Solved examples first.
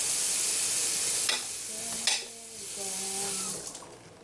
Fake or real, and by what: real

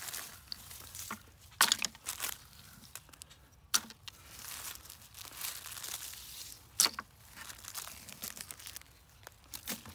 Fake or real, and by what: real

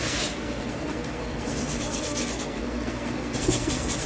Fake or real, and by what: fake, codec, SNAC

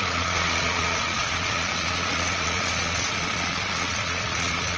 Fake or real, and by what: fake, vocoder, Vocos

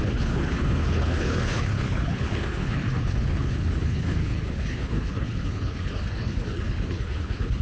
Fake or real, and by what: fake, codec, HILCodec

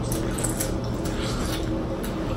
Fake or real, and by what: real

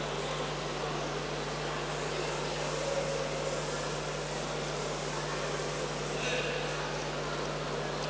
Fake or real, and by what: real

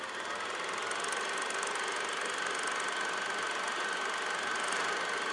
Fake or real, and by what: real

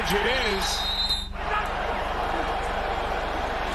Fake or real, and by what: fake, vocoder, BigVGAN v2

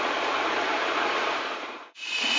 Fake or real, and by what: fake, vocoder, Vocos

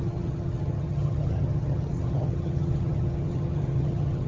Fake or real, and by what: fake, vocoder, HiFi-GAN